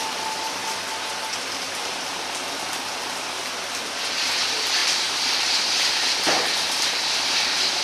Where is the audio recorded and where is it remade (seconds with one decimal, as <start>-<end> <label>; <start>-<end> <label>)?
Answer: 0.0-0.6 remade; 0.6-1.4 recorded; 1.4-7.8 remade